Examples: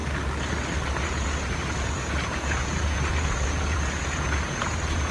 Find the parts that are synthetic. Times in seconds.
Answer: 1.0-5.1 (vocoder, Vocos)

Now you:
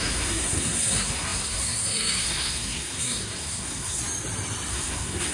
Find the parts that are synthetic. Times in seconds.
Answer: 0.0-4.0 (codec, SNAC); 4.7-5.3

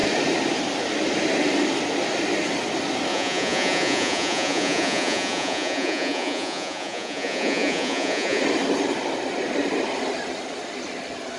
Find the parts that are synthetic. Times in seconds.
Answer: 3.1-8.4 (vocoder, Vocos)